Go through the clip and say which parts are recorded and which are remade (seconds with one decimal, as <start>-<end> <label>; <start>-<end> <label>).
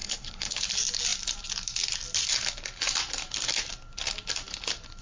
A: 0.0-0.6 remade; 0.6-5.0 recorded